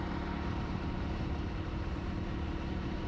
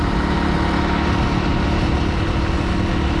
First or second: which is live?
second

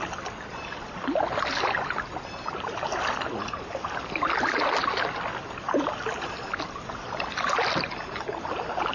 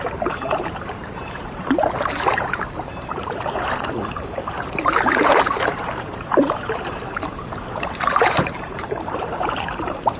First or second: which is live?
first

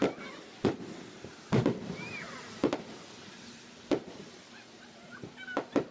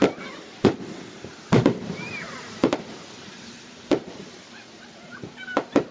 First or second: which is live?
first